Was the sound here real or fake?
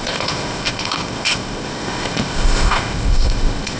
fake